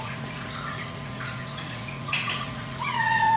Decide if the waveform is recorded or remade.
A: remade